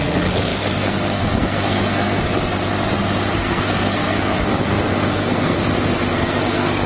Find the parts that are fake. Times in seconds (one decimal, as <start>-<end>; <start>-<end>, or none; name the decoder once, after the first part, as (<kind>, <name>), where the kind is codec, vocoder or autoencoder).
0.0-2.2 (codec, SNAC); 3.3-5.6; 6.1-6.9